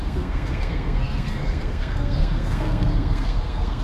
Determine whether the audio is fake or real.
fake